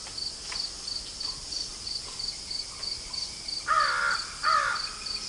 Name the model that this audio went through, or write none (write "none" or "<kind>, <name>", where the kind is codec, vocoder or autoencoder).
none